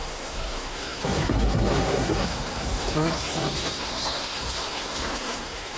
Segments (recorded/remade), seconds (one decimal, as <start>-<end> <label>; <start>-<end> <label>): 0.0-5.8 remade